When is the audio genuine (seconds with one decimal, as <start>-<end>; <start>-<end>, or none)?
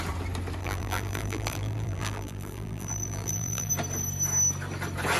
0.0-0.6; 3.7-5.2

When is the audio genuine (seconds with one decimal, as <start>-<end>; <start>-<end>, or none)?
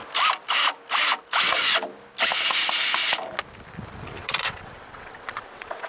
0.0-4.2